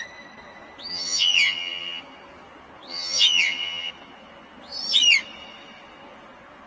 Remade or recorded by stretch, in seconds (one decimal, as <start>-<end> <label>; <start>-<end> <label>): 0.0-0.9 recorded; 0.9-2.0 remade; 2.0-2.9 recorded; 2.9-3.9 remade; 3.9-6.7 recorded